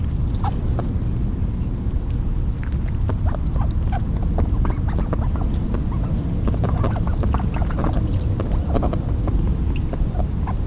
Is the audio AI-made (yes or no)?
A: no